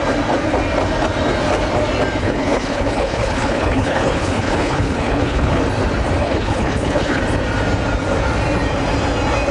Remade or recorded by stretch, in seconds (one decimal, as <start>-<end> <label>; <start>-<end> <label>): 0.0-2.2 recorded; 2.2-5.6 remade; 5.6-6.2 recorded; 6.2-7.2 remade; 7.2-9.5 recorded